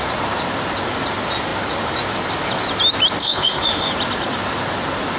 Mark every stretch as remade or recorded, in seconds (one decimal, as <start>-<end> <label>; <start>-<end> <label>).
0.0-3.2 recorded; 3.2-3.9 remade; 3.9-5.2 recorded